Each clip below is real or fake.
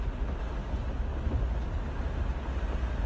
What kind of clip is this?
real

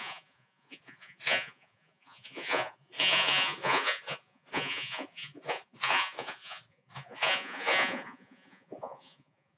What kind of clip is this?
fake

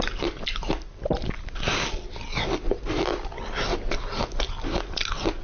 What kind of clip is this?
real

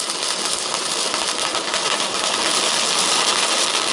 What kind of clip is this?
real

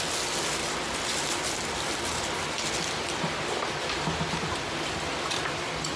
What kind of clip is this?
real